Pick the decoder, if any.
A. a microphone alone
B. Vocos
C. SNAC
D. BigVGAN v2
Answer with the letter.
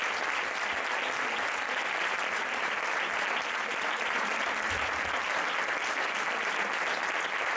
A